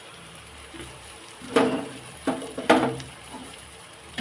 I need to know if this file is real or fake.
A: fake